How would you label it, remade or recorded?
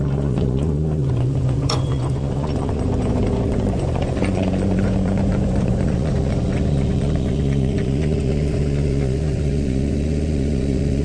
remade